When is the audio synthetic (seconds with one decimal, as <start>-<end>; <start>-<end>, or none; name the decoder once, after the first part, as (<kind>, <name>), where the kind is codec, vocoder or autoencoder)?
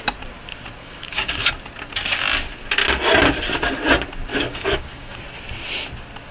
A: 0.8-1.5 (codec, DAC); 4.3-5.2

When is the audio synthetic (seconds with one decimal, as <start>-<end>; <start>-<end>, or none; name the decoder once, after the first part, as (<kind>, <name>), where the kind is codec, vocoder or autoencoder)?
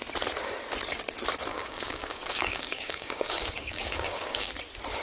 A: 1.5-4.5 (codec, DAC)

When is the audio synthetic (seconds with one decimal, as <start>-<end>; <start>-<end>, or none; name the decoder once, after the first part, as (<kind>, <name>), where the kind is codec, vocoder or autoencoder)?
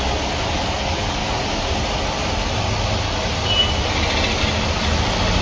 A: none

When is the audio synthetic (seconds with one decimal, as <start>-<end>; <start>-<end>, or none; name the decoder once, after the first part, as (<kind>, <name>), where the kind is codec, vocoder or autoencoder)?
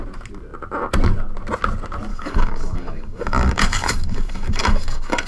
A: 2.1-5.3 (codec, DAC)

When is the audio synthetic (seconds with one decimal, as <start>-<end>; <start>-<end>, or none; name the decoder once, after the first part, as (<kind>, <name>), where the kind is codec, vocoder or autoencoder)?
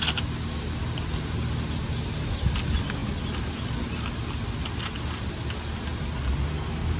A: none